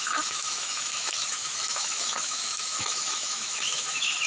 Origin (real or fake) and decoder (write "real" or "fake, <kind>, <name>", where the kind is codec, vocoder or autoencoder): fake, autoencoder, DAC-VAE